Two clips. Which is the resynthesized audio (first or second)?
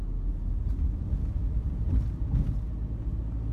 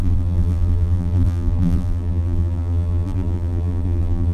second